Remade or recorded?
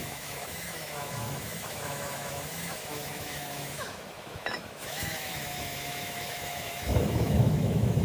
remade